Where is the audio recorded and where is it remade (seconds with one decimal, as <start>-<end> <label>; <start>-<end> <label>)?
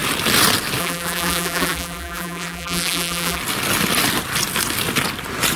0.0-0.8 recorded; 0.8-3.4 remade; 3.4-5.6 recorded